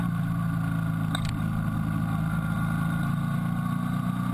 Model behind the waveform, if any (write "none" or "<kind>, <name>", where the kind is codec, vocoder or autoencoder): none